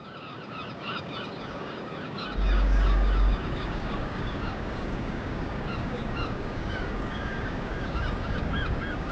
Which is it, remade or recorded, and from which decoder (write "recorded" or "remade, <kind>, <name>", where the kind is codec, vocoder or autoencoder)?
remade, codec, DAC